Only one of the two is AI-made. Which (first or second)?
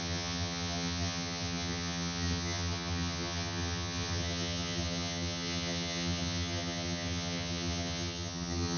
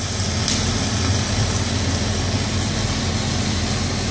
first